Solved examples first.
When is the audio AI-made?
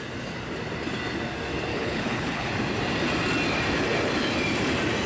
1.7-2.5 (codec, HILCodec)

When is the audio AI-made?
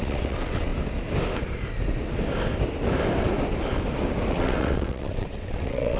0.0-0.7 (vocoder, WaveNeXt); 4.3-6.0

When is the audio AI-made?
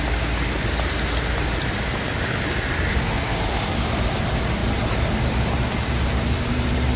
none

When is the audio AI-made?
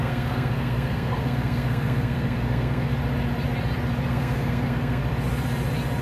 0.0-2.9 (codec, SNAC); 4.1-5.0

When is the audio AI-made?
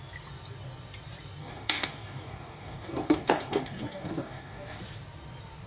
1.4-4.8 (codec, DAC)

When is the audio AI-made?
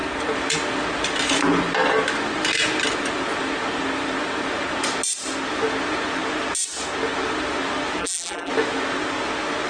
8.0-8.5 (vocoder, BigVGAN v2)